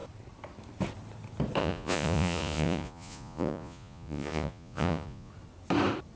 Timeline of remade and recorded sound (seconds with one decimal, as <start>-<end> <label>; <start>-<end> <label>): 0.0-1.6 recorded; 1.6-5.3 remade; 5.3-6.2 recorded